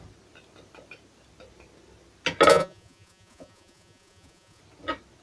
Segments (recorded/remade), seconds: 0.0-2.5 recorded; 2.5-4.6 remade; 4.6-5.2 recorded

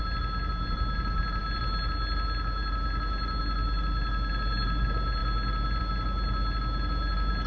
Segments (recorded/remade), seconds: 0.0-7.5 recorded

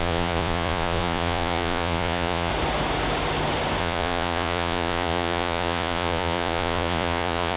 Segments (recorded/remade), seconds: 0.0-2.5 remade; 2.5-3.8 recorded; 3.8-7.6 remade

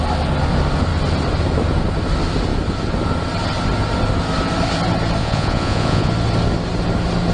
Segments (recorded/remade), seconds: 0.0-5.2 recorded; 5.2-6.1 remade; 6.1-7.3 recorded

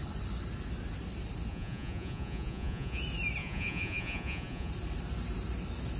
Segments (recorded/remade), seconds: 0.0-1.5 recorded; 1.5-3.0 remade; 3.0-3.4 recorded; 3.4-4.7 remade; 4.7-6.0 recorded

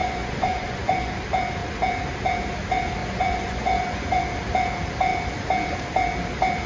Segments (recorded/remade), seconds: 0.0-1.1 remade; 1.1-3.0 recorded; 3.0-4.2 remade; 4.2-6.7 recorded